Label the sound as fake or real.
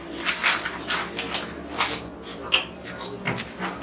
real